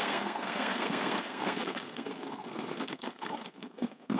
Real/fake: fake